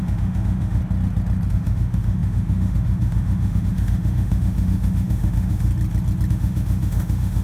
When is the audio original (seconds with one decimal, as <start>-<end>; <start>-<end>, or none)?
0.8-1.5; 5.7-6.3